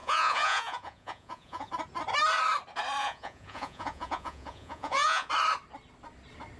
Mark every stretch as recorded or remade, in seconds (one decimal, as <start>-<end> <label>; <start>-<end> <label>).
0.0-1.7 remade; 1.7-3.0 recorded; 3.0-5.3 remade; 5.3-6.6 recorded